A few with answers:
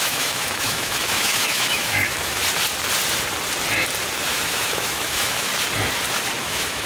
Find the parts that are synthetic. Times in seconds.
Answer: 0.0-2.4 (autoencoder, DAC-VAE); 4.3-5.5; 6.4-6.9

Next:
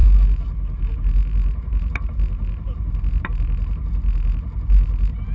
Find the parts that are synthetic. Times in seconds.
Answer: none

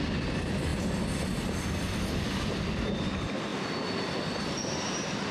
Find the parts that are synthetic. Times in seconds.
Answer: none

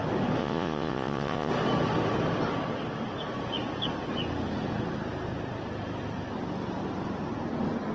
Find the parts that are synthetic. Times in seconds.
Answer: 0.4-1.5 (vocoder, Vocos)

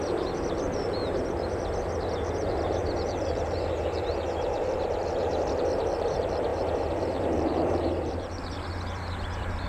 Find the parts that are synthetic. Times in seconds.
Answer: 0.0-1.0 (vocoder, BigVGAN v2); 2.0-9.7